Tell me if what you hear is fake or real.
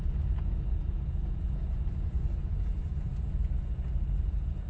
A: fake